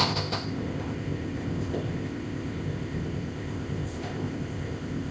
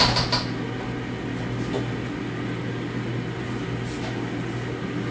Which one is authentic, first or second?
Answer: second